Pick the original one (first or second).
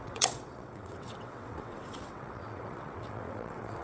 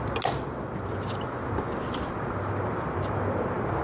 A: second